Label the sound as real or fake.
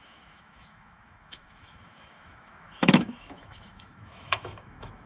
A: fake